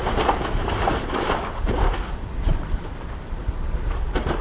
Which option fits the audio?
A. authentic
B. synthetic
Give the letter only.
A